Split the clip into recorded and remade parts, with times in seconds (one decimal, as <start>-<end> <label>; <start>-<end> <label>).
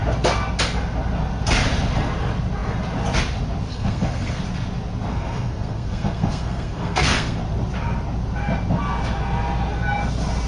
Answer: 0.0-3.7 recorded; 3.7-4.4 remade; 4.4-5.1 recorded; 5.1-7.4 remade; 7.4-10.5 recorded